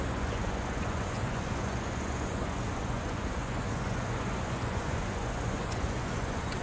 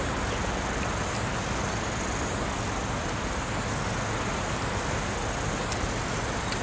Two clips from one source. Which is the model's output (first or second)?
first